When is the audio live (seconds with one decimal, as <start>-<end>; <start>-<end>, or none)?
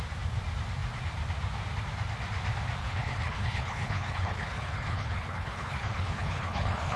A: 0.0-2.8